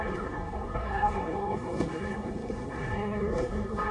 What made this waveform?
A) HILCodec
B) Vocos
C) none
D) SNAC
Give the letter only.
D